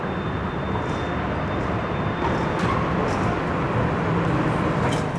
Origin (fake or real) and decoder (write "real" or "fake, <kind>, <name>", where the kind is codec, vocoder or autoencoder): real